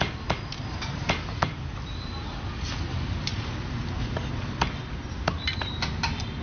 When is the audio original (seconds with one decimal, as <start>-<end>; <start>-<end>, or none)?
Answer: 0.0-6.4